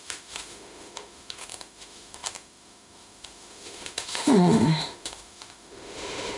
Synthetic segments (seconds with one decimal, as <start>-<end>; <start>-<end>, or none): 0.0-6.4